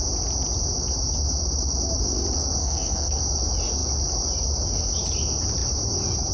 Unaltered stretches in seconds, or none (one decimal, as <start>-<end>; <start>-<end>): 0.0-2.6; 3.2-6.3